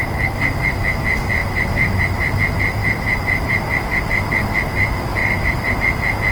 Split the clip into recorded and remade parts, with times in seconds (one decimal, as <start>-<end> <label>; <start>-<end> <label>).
0.0-1.4 recorded; 1.4-2.3 remade; 2.3-2.8 recorded; 2.8-4.0 remade; 4.0-5.2 recorded; 5.2-5.8 remade; 5.8-6.3 recorded